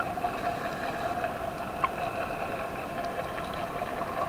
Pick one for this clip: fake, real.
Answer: real